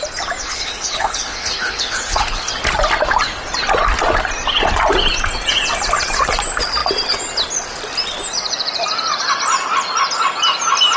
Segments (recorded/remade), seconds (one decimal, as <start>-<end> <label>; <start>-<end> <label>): 0.0-0.4 recorded; 0.4-2.5 remade; 2.5-11.0 recorded